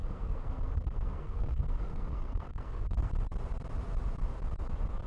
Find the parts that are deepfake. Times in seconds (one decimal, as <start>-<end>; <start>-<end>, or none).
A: 0.0-3.1